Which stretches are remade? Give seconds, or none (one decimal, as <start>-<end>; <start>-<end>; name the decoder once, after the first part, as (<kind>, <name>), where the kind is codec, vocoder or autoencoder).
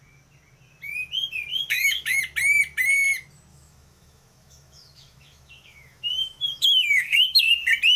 1.5-2.2 (autoencoder, DAC-VAE); 3.5-7.4